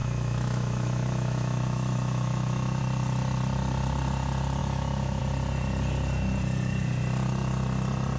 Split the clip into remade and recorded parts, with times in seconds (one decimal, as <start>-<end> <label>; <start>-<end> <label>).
0.0-2.8 remade; 2.8-4.6 recorded; 4.6-5.2 remade; 5.2-8.2 recorded